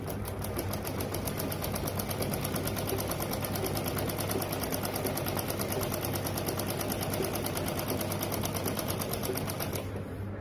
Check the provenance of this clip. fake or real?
real